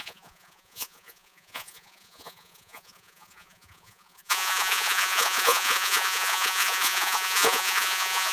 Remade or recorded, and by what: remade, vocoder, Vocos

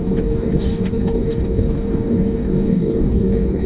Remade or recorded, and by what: remade, codec, DAC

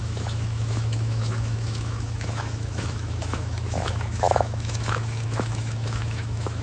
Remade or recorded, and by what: remade, autoencoder, DAC-VAE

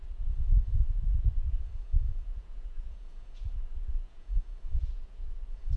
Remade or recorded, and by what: remade, vocoder, Vocos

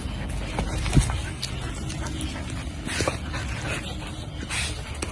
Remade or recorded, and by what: recorded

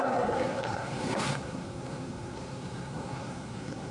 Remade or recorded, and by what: remade, codec, SNAC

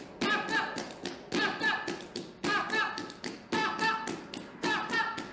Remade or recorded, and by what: recorded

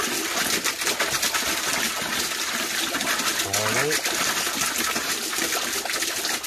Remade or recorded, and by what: recorded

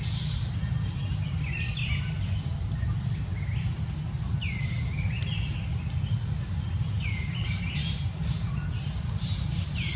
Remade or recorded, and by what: remade, vocoder, BigVGAN v2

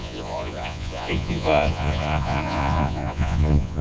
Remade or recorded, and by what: remade, vocoder, Vocos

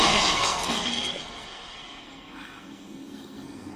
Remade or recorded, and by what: remade, codec, SNAC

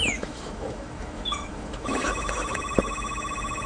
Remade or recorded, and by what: remade, autoencoder, DAC-VAE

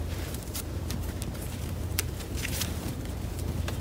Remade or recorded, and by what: remade, vocoder, BigVGAN v2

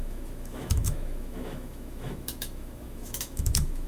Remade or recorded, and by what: remade, autoencoder, DAC-VAE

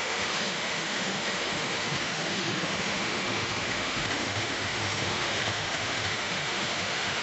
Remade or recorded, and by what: remade, autoencoder, DAC-VAE